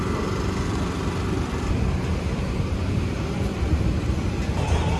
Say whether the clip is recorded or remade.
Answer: remade